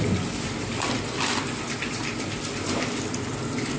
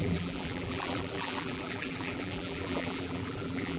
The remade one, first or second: second